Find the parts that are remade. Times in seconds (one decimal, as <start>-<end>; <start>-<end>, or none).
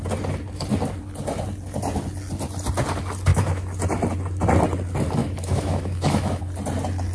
3.3-3.8; 5.2-6.4